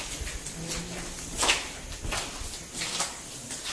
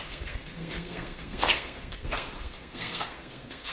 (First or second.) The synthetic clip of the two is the second